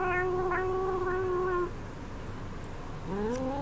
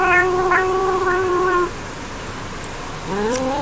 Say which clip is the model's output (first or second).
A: second